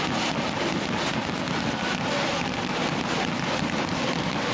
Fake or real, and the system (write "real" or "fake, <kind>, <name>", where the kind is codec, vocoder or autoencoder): real